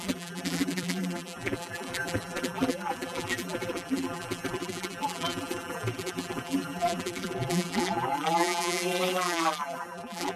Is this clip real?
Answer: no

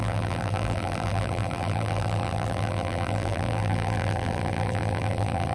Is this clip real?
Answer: no